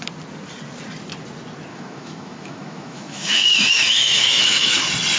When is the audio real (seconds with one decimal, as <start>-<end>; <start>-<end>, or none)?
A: 0.0-1.7; 4.8-5.2